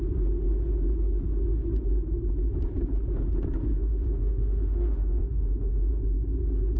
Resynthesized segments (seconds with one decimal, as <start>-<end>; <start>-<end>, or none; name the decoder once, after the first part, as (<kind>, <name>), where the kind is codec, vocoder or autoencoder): 3.6-5.9 (autoencoder, DAC-VAE)